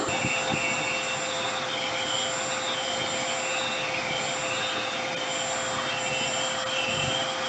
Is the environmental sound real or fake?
real